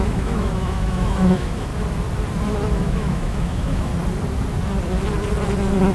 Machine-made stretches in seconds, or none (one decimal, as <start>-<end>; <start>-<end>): 0.0-1.7; 2.7-3.9